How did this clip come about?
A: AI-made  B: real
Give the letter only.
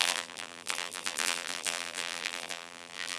A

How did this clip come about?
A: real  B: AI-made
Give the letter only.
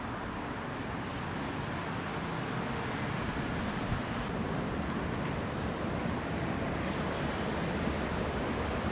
B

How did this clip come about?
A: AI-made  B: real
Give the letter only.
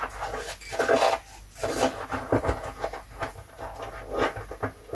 B